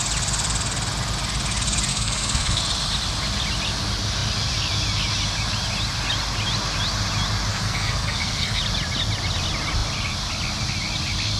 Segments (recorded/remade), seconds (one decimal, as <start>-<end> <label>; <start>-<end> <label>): 0.0-1.9 recorded; 1.9-2.6 remade; 2.6-7.5 recorded; 7.5-8.6 remade; 8.6-11.4 recorded